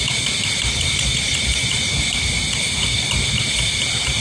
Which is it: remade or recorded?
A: remade